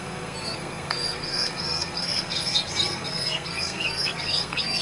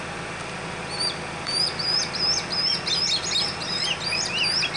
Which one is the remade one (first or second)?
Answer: first